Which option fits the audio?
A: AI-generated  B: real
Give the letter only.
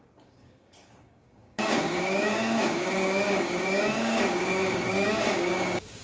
A